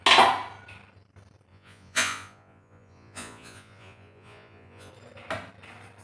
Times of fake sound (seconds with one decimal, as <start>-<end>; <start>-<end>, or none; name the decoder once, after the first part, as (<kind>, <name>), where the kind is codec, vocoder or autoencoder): 1.5-4.9 (vocoder, Vocos)